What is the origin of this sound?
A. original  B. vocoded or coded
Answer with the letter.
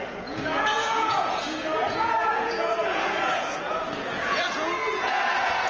B